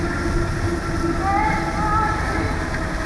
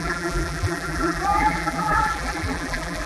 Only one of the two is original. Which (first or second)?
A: first